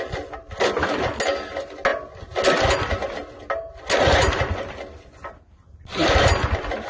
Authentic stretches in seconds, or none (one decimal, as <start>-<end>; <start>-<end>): 0.0-6.9